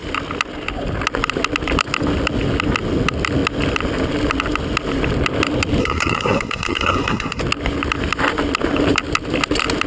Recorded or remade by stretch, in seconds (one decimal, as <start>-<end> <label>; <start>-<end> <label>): 0.0-5.8 recorded; 5.8-7.4 remade; 7.4-9.9 recorded